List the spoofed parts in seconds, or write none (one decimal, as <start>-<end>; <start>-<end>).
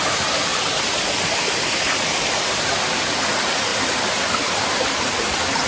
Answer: 0.5-2.5; 3.7-4.3